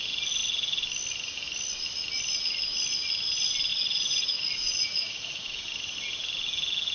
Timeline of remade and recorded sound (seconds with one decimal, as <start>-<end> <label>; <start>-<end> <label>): 0.0-3.7 recorded; 3.7-5.6 remade; 5.6-6.9 recorded

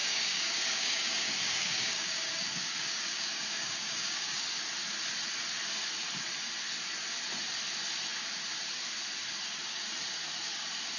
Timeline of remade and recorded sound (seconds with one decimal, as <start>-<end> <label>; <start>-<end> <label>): 0.0-4.4 remade; 4.4-11.0 recorded

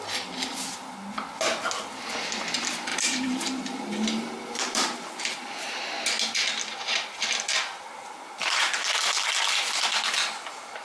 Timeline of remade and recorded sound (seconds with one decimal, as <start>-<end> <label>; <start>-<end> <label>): 0.0-2.9 recorded; 2.9-5.5 remade; 5.5-7.9 recorded; 7.9-8.8 remade; 8.8-10.8 recorded

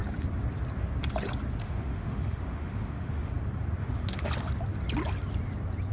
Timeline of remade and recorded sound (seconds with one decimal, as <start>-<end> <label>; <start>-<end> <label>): 0.0-1.6 recorded; 1.6-3.3 remade; 3.3-3.8 recorded; 3.8-4.3 remade; 4.3-5.9 recorded

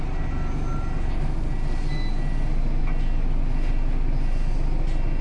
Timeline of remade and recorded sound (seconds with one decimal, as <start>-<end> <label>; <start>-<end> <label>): 0.0-5.2 recorded

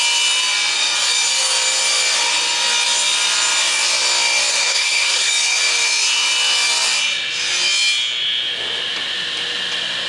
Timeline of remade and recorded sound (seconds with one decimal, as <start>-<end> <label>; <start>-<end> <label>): 0.0-4.5 recorded; 4.5-5.3 remade; 5.3-10.1 recorded

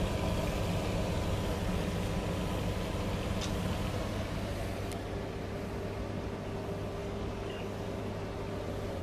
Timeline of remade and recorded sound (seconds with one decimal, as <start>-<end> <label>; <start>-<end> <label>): 0.0-7.0 recorded; 7.0-8.0 remade; 8.0-9.0 recorded